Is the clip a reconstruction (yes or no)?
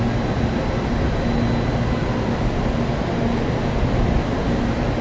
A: no